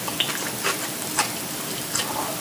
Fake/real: real